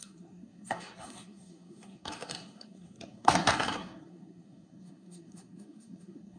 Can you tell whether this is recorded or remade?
remade